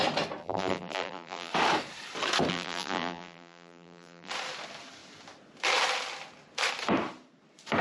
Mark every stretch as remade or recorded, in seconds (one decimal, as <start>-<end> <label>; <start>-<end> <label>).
0.0-0.4 recorded; 0.4-1.5 remade; 1.5-2.5 recorded; 2.5-4.3 remade; 4.3-7.8 recorded